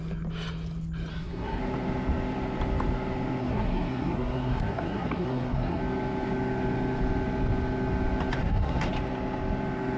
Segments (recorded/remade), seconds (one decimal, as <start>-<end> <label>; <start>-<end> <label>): 0.0-1.1 recorded; 1.1-1.6 remade; 1.6-3.4 recorded; 3.4-5.8 remade; 5.8-8.4 recorded; 8.4-8.9 remade; 8.9-10.0 recorded